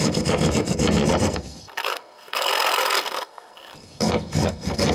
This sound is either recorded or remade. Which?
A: remade